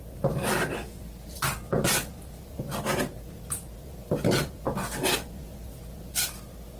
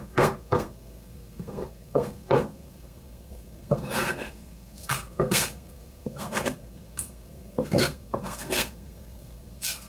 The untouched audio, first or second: first